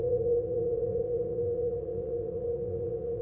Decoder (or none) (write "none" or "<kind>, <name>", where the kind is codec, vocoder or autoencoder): vocoder, Vocos